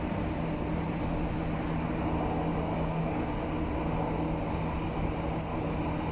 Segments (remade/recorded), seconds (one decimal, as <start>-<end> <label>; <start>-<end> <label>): 0.0-2.5 recorded; 2.5-3.3 remade; 3.3-6.1 recorded